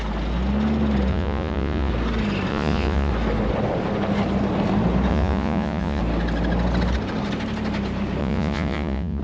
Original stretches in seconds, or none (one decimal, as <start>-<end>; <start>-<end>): 0.0-1.1; 1.9-2.5; 3.1-5.1; 6.0-8.2